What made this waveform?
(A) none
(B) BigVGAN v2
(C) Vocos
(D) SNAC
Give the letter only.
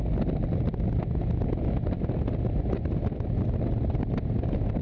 A